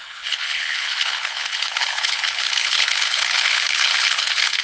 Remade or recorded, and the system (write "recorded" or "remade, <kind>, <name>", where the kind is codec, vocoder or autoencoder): remade, codec, HILCodec